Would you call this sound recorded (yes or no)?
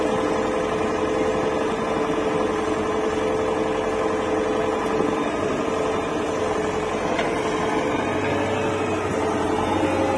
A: yes